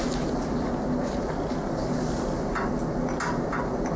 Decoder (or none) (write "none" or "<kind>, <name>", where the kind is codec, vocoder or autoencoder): none